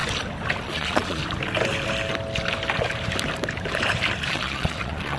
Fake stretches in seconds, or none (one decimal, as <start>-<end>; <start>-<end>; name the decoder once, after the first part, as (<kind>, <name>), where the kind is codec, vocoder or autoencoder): 0.6-1.2 (vocoder, Vocos); 4.3-5.2